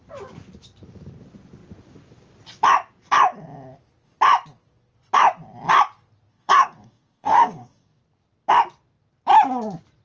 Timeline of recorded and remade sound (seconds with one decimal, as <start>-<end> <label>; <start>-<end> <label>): 0.0-6.3 recorded; 6.3-8.0 remade; 8.0-10.0 recorded

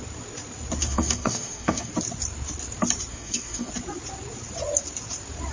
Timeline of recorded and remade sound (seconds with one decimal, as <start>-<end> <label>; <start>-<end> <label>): 0.0-0.8 recorded; 0.8-1.9 remade; 1.9-3.1 recorded; 3.1-3.7 remade; 3.7-5.5 recorded

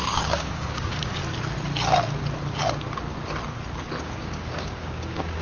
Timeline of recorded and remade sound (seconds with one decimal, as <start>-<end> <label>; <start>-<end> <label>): 0.0-1.2 remade; 1.2-4.0 recorded; 4.0-5.4 remade